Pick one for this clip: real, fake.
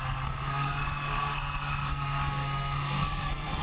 fake